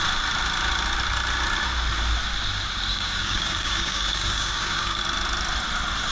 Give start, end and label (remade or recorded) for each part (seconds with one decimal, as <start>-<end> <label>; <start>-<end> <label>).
0.0-2.9 recorded; 2.9-5.0 remade; 5.0-6.1 recorded